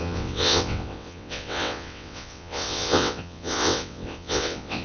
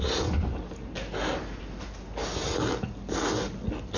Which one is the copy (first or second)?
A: first